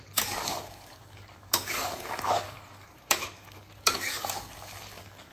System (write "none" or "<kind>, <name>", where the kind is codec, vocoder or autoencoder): codec, DAC